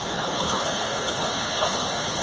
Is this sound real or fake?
fake